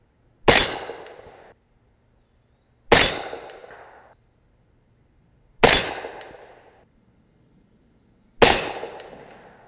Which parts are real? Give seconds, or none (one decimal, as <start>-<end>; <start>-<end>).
0.0-9.7